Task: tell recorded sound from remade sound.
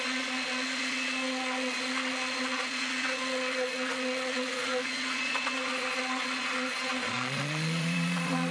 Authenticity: remade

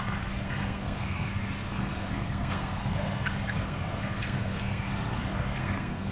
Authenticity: remade